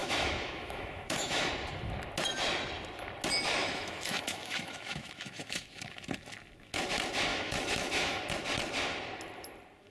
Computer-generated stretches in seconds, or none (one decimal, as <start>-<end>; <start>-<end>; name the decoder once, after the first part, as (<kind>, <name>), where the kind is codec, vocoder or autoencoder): 0.0-1.5 (autoencoder, DAC-VAE); 3.6-6.0; 7.3-8.2